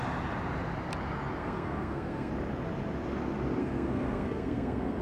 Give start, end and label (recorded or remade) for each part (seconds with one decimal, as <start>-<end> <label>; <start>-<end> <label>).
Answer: 0.0-1.4 recorded; 1.4-2.3 remade; 2.3-3.6 recorded; 3.6-5.0 remade